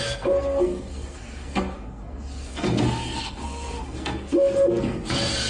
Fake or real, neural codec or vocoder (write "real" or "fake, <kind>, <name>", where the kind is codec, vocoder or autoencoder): fake, codec, SNAC